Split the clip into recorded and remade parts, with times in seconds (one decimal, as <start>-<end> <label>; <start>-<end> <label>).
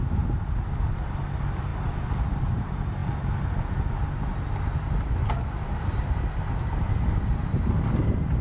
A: 0.0-8.4 recorded